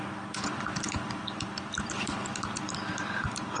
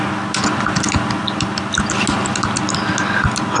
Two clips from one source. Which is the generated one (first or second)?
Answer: first